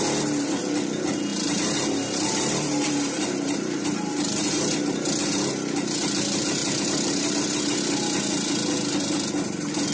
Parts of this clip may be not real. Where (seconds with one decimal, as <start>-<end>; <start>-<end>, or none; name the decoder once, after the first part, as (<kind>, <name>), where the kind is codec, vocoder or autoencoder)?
1.3-5.1 (vocoder, BigVGAN v2); 6.6-7.8

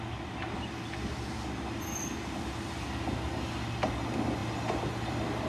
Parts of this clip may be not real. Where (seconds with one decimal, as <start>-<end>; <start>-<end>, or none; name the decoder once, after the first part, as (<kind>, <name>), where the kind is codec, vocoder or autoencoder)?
none

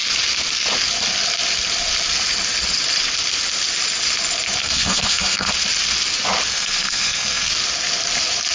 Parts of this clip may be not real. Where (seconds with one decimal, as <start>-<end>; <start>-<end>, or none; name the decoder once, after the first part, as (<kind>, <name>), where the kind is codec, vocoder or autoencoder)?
4.6-5.5 (codec, SNAC); 6.5-7.5

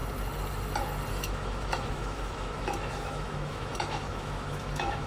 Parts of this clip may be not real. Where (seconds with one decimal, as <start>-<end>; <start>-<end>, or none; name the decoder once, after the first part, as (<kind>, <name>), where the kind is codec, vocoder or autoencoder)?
1.1-5.1 (autoencoder, DAC-VAE)

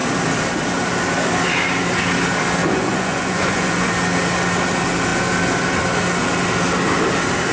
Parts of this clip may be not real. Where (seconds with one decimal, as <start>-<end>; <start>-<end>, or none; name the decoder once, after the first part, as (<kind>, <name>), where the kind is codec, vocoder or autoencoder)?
2.6-3.9 (vocoder, Vocos)

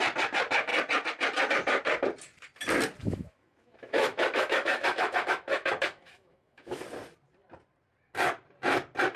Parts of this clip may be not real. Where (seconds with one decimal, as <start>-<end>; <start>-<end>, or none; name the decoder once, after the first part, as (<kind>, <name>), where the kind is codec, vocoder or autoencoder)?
3.0-6.8 (autoencoder, DAC-VAE)

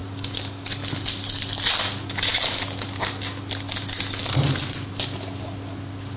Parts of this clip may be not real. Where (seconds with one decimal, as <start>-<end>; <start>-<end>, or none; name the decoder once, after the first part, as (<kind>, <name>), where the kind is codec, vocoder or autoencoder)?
0.0-0.8 (codec, DAC)

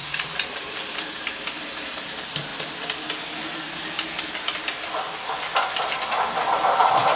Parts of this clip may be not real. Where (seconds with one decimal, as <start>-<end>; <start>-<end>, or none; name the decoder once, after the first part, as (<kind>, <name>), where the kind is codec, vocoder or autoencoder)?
none